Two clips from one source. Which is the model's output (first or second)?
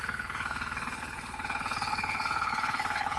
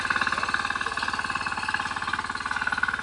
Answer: first